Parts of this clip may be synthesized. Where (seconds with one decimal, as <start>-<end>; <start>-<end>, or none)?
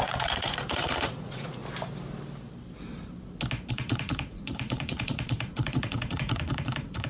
0.0-1.6; 3.7-7.1